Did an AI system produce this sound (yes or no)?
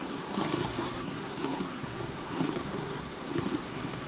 yes